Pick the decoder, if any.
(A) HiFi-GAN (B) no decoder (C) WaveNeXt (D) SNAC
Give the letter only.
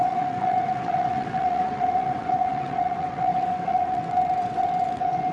C